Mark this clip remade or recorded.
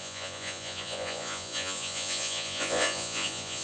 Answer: remade